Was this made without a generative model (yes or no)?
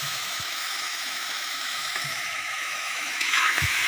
no